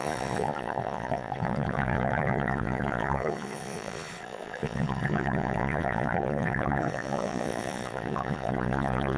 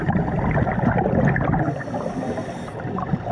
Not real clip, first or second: first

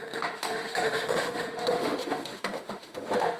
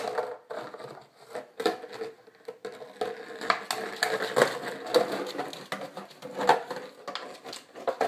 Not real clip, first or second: first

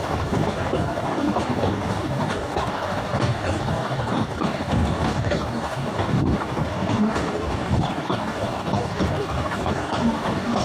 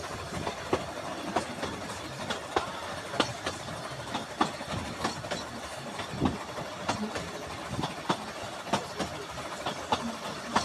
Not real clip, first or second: first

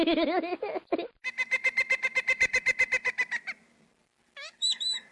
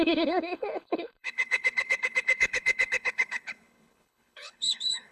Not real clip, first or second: second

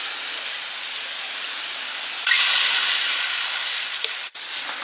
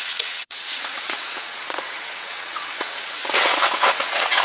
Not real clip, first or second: second